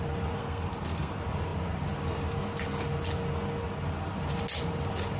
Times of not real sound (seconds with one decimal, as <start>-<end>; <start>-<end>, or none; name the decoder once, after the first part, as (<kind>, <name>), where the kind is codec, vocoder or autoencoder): 0.4-1.1 (codec, SNAC)